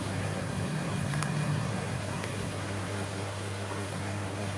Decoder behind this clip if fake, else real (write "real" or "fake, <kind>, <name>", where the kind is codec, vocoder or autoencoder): fake, codec, SNAC